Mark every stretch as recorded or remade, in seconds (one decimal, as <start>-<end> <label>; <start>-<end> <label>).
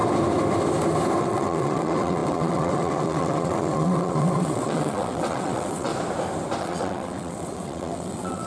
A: 0.0-1.2 recorded; 1.2-5.9 remade; 5.9-6.6 recorded; 6.6-8.5 remade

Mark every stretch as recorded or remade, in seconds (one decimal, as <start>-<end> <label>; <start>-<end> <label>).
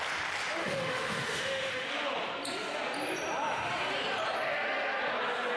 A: 0.0-0.6 recorded; 0.6-1.9 remade; 1.9-5.6 recorded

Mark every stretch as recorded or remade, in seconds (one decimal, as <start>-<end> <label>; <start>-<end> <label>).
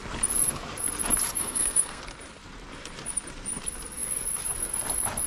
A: 0.0-1.4 recorded; 1.4-2.0 remade; 2.0-5.3 recorded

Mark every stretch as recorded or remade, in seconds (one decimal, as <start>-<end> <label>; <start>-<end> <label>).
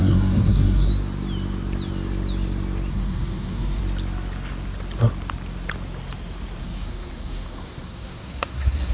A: 0.0-0.9 remade; 0.9-2.9 recorded; 2.9-3.8 remade; 3.8-6.6 recorded; 6.6-8.9 remade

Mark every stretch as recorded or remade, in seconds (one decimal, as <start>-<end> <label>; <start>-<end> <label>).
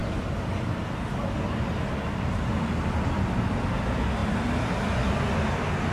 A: 0.0-5.9 recorded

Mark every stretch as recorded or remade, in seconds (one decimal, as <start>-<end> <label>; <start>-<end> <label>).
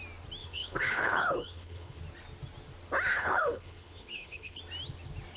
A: 0.0-0.4 recorded; 0.4-2.0 remade; 2.0-3.1 recorded; 3.1-4.6 remade; 4.6-5.4 recorded